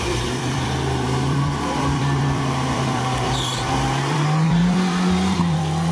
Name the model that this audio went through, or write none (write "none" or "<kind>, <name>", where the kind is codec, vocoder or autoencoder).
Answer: vocoder, BigVGAN v2